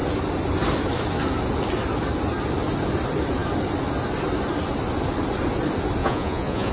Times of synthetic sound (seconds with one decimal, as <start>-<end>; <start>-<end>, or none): 6.0-6.7